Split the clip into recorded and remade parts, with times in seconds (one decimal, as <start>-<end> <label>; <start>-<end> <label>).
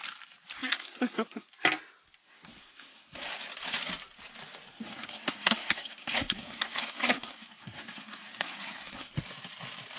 0.0-0.5 recorded; 0.5-1.5 remade; 1.5-2.2 recorded; 2.2-3.3 remade; 3.3-4.7 recorded; 4.7-9.2 remade; 9.2-10.0 recorded